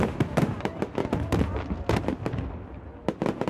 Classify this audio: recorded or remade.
recorded